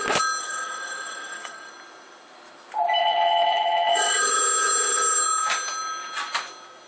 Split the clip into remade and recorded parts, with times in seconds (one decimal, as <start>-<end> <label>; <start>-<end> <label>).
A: 0.0-0.4 recorded; 0.4-1.7 remade; 1.7-3.0 recorded; 3.0-4.2 remade; 4.2-6.9 recorded